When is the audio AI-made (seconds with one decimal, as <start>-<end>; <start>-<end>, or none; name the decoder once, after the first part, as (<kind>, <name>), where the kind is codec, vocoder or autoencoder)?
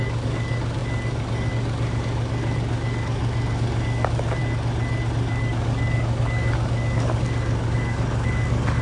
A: 0.0-4.4 (codec, DAC); 5.3-8.8